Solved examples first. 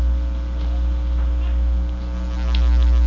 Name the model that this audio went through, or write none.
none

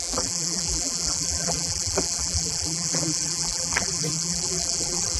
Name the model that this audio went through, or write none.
vocoder, BigVGAN v2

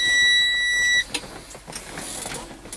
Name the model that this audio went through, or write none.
none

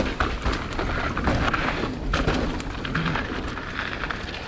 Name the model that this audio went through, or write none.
none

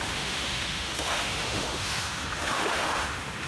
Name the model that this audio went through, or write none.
autoencoder, DAC-VAE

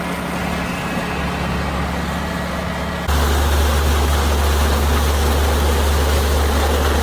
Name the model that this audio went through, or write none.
none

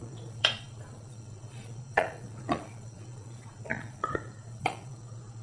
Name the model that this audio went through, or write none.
vocoder, Vocos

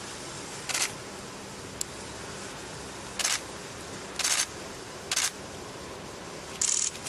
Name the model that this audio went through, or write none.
none